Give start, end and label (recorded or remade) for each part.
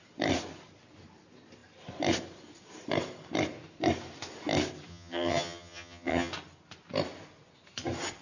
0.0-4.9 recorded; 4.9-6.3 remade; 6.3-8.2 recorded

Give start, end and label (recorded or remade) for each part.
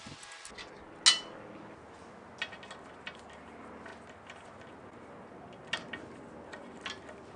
0.0-7.4 recorded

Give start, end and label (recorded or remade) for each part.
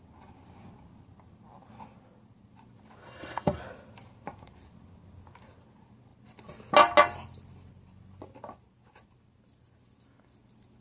0.0-3.0 recorded; 3.0-3.6 remade; 3.6-10.8 recorded